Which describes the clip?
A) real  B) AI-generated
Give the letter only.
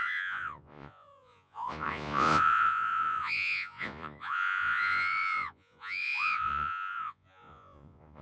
B